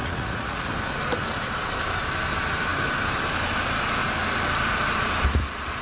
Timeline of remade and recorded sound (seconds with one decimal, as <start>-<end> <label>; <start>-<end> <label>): 0.0-0.7 remade; 0.7-5.8 recorded

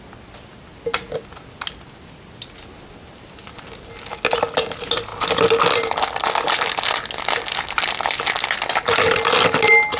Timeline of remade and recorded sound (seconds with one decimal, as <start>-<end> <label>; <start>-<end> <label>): 0.0-10.0 recorded